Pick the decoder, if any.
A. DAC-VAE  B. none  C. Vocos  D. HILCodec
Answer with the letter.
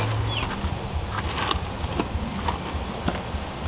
B